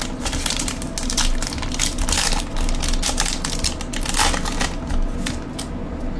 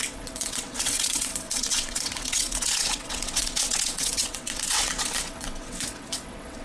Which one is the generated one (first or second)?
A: second